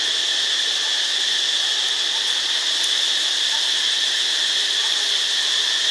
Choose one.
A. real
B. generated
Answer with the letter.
A